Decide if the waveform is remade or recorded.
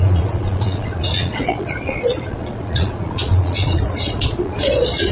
remade